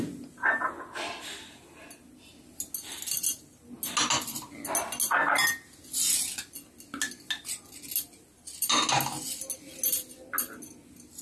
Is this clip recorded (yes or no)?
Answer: yes